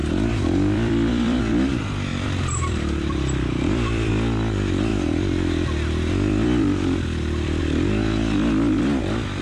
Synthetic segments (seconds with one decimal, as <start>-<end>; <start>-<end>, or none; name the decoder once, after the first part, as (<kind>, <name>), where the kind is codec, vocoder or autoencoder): 0.0-1.4 (vocoder, BigVGAN v2); 2.1-4.1; 4.9-7.6